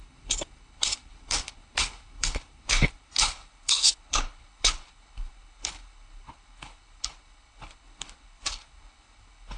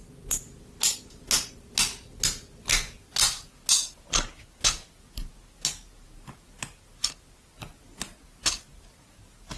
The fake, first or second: first